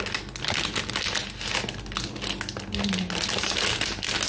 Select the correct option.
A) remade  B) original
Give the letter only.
B